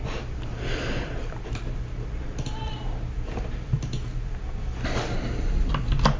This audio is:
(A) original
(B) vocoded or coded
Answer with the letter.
A